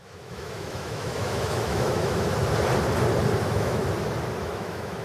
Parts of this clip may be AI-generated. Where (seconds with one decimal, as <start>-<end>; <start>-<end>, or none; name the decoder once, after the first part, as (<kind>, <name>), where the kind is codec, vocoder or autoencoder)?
0.0-2.3 (autoencoder, DAC-VAE); 3.4-3.8; 4.4-5.0